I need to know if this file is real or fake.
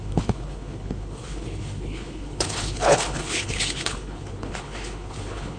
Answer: fake